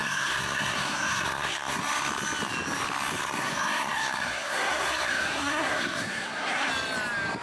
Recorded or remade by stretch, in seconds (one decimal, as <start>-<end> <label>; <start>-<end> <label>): 0.0-1.8 remade; 1.8-3.2 recorded; 3.2-6.7 remade; 6.7-7.4 recorded